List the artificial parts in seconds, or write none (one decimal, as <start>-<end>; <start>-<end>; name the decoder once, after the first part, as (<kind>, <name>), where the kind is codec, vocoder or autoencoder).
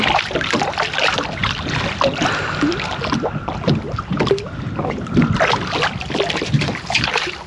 none